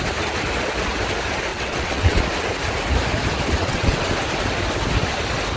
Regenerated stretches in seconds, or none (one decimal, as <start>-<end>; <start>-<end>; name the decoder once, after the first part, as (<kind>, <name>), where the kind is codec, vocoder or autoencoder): 1.5-2.2 (vocoder, WaveNeXt); 3.6-4.1